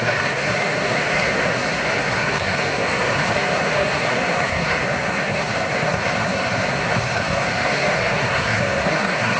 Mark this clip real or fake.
fake